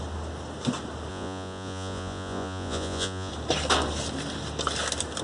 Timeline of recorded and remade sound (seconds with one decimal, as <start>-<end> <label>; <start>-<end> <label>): 0.0-1.1 recorded; 1.1-3.3 remade; 3.3-5.2 recorded